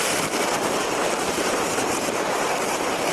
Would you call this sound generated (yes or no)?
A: yes